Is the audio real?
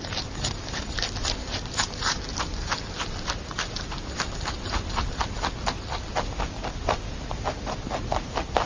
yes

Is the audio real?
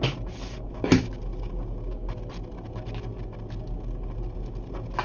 yes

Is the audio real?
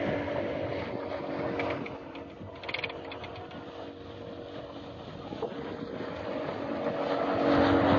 yes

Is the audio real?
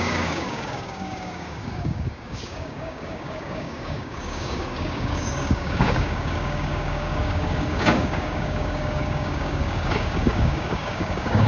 no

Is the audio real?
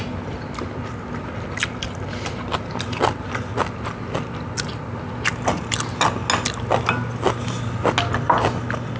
yes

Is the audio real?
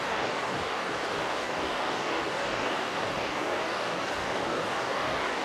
no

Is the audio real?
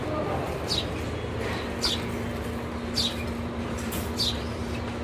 yes